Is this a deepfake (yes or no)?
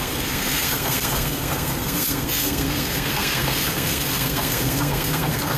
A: yes